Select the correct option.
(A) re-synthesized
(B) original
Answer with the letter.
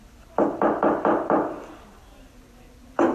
A